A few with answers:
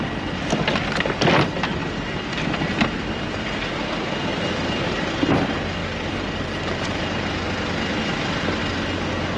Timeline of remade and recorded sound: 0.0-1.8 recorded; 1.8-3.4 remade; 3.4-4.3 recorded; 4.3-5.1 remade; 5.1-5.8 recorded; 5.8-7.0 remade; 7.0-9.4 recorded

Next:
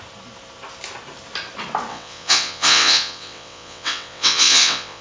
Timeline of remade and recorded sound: 0.0-1.9 recorded; 1.9-5.0 remade